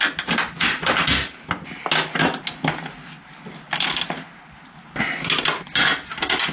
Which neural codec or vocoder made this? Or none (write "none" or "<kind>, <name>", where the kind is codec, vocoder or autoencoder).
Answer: none